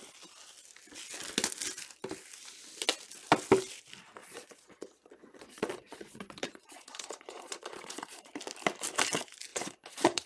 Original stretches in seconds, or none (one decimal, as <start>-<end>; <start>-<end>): 0.0-4.2; 8.3-9.5